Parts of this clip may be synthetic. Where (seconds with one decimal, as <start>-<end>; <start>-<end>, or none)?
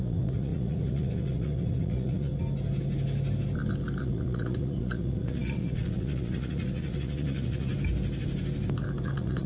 0.0-2.3; 4.0-7.7; 9.0-9.5